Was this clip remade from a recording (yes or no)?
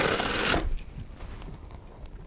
no